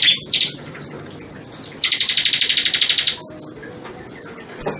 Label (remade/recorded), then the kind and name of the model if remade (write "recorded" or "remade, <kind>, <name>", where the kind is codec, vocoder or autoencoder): recorded